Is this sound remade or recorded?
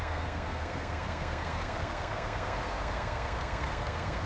remade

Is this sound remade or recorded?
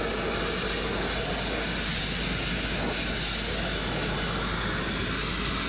recorded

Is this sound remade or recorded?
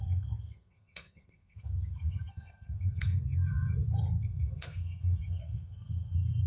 remade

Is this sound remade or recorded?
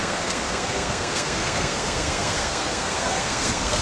remade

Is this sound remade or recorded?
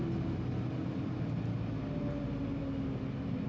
recorded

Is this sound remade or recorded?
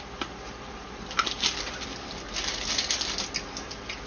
recorded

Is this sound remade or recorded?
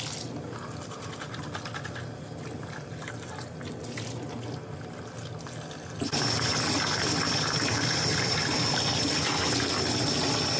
recorded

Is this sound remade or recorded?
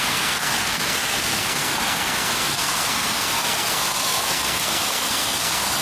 remade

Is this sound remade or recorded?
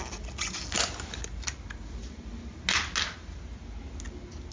recorded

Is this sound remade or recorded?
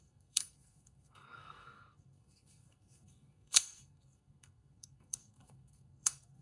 remade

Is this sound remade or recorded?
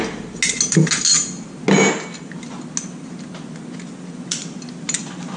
recorded